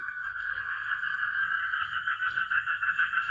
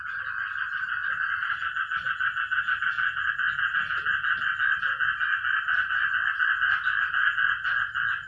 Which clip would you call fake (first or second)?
first